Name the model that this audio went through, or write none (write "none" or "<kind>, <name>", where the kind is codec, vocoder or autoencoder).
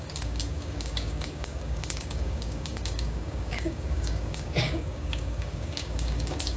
codec, DAC